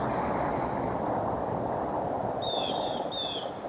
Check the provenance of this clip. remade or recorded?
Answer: recorded